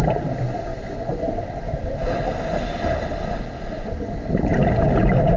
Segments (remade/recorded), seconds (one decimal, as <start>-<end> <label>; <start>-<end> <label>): 0.0-0.7 recorded; 0.7-1.3 remade; 1.3-2.0 recorded; 2.0-3.3 remade; 3.3-5.4 recorded